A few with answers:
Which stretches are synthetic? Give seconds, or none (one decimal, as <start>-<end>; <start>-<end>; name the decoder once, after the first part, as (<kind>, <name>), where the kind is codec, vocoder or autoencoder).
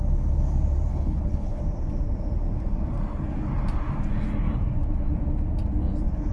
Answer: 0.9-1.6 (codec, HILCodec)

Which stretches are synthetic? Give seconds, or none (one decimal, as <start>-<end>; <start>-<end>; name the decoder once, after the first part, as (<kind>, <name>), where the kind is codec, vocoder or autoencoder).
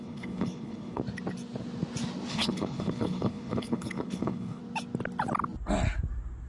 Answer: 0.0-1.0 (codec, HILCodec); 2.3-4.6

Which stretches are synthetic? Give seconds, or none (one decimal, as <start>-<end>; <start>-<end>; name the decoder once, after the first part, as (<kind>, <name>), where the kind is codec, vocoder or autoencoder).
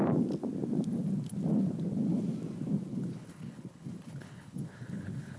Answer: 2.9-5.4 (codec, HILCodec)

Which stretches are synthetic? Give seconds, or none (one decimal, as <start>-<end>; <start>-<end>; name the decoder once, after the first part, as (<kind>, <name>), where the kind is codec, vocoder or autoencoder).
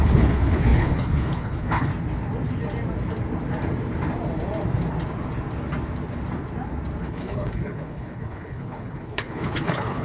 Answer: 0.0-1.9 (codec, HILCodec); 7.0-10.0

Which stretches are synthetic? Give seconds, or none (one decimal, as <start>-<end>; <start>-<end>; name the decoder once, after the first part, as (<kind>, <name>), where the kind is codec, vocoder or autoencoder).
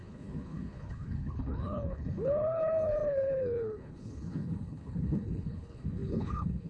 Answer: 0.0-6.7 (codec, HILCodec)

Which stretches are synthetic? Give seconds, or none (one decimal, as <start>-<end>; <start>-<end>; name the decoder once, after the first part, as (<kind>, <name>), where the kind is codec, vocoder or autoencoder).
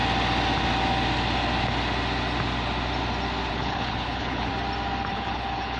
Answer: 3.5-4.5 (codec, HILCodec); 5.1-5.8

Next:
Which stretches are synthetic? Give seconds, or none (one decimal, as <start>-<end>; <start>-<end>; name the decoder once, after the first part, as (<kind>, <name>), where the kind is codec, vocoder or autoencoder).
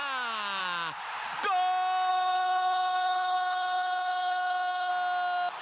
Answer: 2.1-4.9 (codec, HILCodec)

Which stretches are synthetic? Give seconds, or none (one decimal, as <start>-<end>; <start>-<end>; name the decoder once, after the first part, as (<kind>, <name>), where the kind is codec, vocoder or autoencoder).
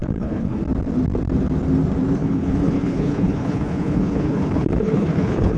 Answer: 0.0-0.6 (codec, HILCodec); 2.2-5.6